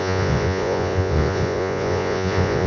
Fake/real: fake